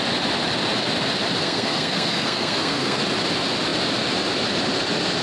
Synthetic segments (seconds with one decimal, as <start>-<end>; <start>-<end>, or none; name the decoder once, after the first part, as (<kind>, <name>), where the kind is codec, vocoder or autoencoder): 1.4-3.0 (codec, SNAC)